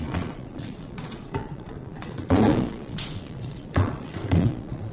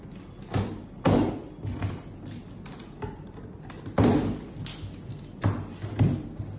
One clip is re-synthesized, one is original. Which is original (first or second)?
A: second